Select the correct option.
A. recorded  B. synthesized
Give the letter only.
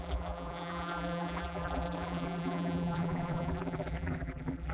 B